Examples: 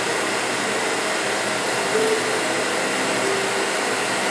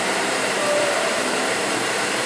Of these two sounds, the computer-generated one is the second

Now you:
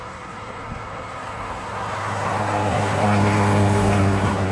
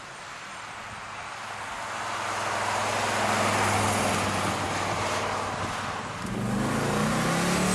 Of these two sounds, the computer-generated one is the first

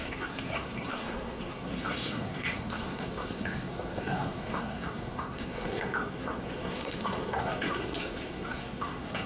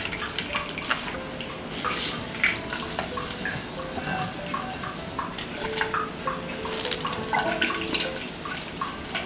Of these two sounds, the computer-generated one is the first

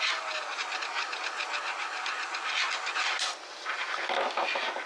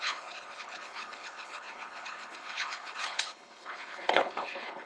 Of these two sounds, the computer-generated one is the second